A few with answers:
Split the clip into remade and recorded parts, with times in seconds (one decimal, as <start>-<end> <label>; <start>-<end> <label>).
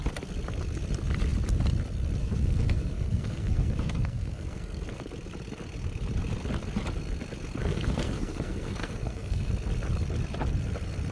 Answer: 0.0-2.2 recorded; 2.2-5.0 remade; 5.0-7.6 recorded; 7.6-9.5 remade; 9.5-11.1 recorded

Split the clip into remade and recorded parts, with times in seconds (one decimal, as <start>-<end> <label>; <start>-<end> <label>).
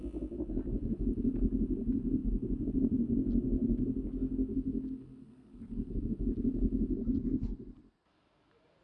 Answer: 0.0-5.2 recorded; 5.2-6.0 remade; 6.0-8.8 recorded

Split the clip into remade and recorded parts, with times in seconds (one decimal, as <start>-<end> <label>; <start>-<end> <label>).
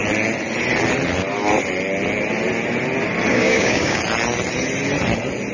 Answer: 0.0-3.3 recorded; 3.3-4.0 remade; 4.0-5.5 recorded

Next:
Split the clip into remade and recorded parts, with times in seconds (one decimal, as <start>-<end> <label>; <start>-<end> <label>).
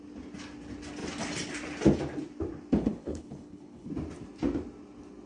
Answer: 0.0-2.8 recorded; 2.8-3.9 remade; 3.9-5.3 recorded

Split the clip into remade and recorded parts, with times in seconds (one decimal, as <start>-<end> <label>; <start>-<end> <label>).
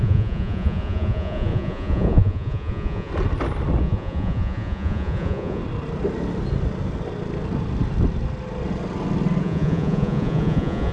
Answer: 0.0-3.1 remade; 3.1-3.8 recorded; 3.8-5.6 remade; 5.6-9.4 recorded; 9.4-10.9 remade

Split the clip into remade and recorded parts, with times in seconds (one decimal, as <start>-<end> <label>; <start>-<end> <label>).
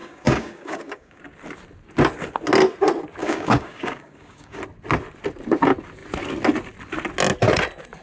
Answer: 0.0-1.2 remade; 1.2-3.2 recorded; 3.2-4.6 remade; 4.6-8.0 recorded